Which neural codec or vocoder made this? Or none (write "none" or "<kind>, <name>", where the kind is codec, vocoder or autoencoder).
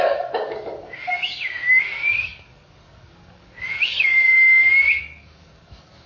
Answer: codec, DAC